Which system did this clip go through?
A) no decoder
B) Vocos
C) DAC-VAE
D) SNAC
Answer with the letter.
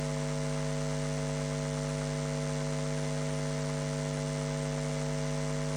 A